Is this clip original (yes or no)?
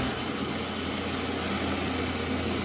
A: yes